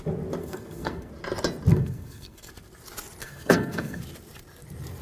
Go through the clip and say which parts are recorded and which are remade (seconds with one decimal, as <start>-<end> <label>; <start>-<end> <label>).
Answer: 0.0-0.4 recorded; 0.4-1.1 remade; 1.1-1.7 recorded; 1.7-2.5 remade; 2.5-3.2 recorded; 3.2-4.0 remade; 4.0-5.0 recorded